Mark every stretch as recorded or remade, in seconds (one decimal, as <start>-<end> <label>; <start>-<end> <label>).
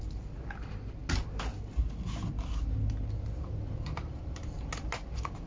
0.0-5.5 recorded